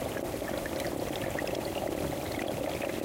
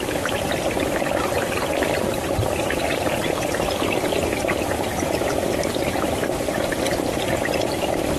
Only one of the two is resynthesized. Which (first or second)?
second